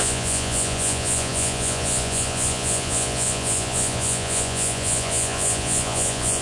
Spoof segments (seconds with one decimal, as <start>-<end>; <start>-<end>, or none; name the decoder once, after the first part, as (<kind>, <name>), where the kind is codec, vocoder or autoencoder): 0.0-6.4 (vocoder, Vocos)